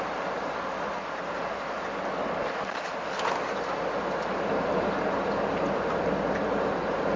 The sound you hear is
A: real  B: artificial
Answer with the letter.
B